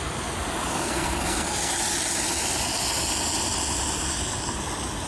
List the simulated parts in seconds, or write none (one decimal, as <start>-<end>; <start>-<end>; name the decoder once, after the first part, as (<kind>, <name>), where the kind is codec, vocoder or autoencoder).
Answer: 0.7-1.7 (codec, SNAC)